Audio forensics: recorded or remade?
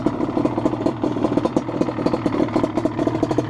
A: recorded